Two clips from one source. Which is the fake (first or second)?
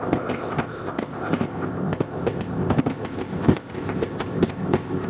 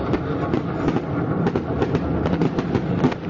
first